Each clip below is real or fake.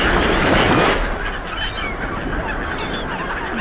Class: real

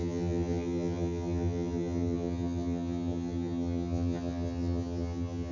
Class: fake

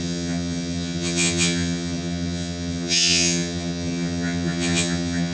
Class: fake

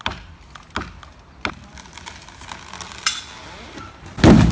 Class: real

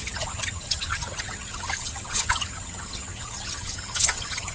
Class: fake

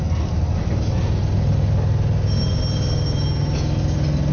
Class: real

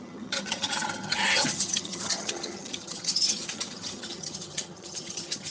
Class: fake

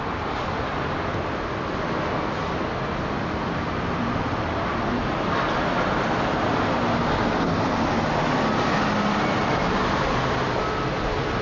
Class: real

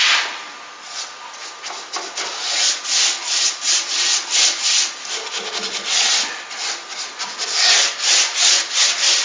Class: real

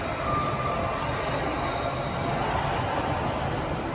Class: real